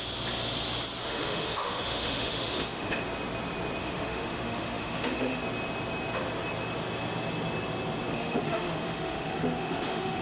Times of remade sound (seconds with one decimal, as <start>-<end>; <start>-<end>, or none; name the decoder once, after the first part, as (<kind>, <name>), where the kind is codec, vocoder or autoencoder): 1.0-3.0 (autoencoder, DAC-VAE); 3.8-5.4; 8.1-10.2